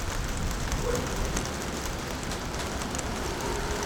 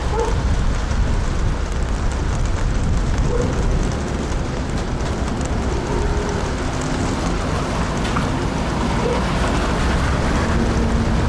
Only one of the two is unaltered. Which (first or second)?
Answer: second